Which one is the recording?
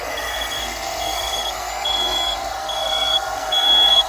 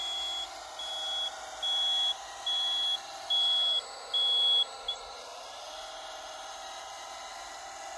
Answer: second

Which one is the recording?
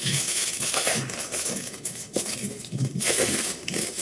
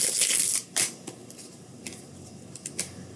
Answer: second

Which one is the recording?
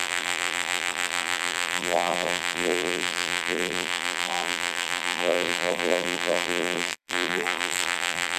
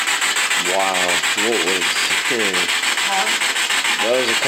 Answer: second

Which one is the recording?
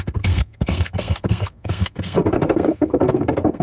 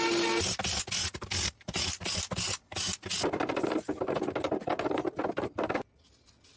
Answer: second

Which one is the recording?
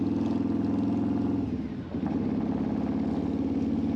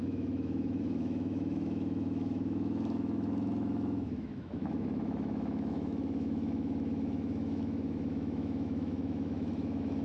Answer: first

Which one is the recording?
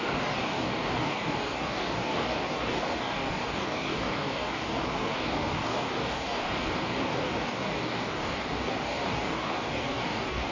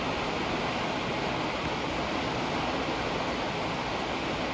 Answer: second